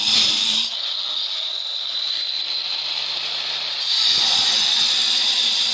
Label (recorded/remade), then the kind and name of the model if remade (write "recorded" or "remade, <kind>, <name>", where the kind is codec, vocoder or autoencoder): remade, vocoder, BigVGAN v2